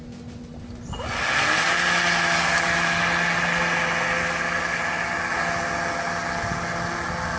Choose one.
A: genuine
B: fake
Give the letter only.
A